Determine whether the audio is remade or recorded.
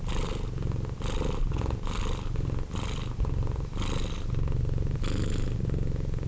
recorded